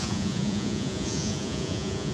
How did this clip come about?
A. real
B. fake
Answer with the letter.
B